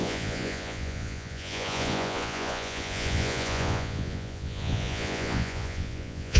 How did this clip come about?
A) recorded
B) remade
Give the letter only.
B